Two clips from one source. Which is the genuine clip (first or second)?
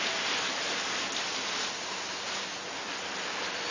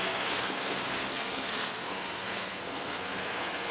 first